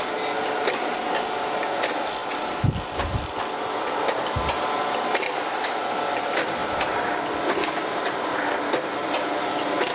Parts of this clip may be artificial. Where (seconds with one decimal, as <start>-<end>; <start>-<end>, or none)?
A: none